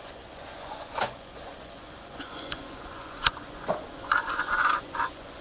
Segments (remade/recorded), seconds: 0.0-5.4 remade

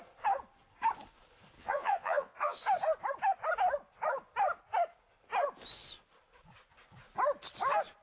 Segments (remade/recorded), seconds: 0.0-1.6 recorded; 1.6-2.6 remade; 2.6-8.0 recorded

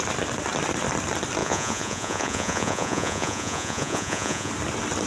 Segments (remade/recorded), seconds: 0.0-1.4 recorded; 1.4-4.5 remade; 4.5-5.1 recorded

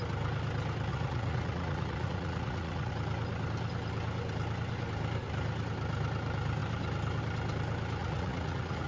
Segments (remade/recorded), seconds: 0.0-0.9 recorded; 0.9-2.9 remade; 2.9-8.0 recorded; 8.0-8.9 remade

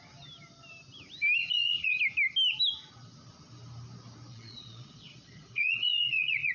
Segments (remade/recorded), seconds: 0.0-1.4 recorded; 1.4-2.0 remade; 2.0-4.3 recorded; 4.3-6.5 remade

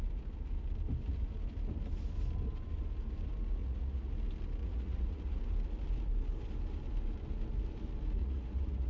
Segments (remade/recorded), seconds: 0.0-3.6 recorded; 3.6-4.1 remade; 4.1-4.6 recorded; 4.6-5.4 remade; 5.4-8.2 recorded; 8.2-8.9 remade

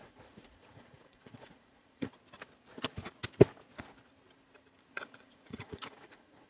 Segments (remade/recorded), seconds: 0.0-2.1 remade; 2.1-4.9 recorded; 4.9-6.5 remade